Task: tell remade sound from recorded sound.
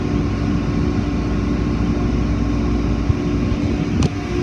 recorded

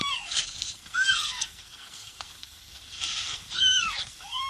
remade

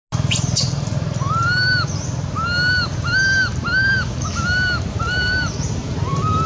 recorded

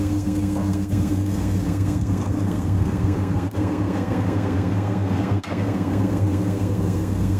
remade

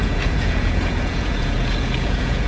remade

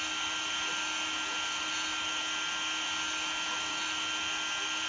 recorded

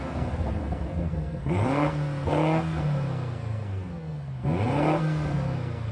remade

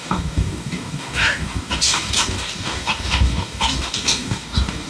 remade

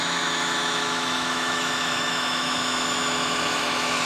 remade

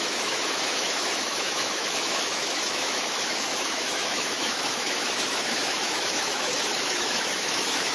remade